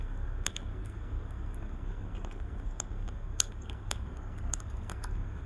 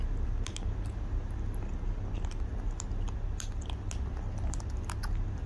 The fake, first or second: first